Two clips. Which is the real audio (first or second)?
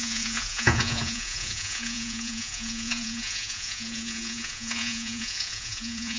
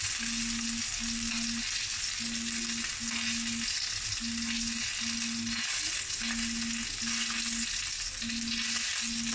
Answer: second